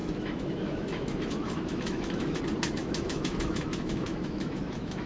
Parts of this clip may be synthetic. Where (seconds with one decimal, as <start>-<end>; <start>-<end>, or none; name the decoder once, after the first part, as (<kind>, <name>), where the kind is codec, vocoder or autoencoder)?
0.0-2.4 (autoencoder, DAC-VAE); 2.8-5.1